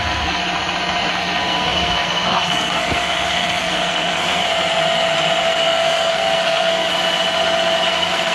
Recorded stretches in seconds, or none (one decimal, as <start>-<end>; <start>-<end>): 0.4-1.1; 4.4-5.4; 6.9-7.9